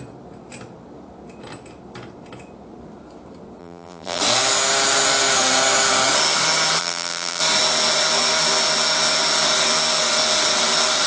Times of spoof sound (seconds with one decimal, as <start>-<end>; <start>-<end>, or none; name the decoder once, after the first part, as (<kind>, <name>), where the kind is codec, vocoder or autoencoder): 3.6-4.2 (vocoder, BigVGAN v2); 6.8-7.4